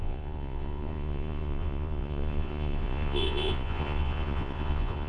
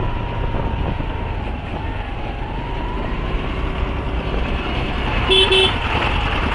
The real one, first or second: second